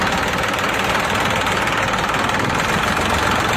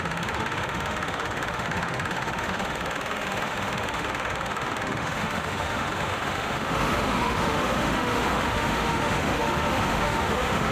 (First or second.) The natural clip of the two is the first